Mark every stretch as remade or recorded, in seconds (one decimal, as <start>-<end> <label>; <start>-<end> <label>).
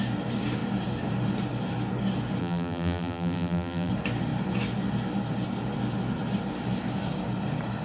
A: 0.0-2.4 recorded; 2.4-3.9 remade; 3.9-7.8 recorded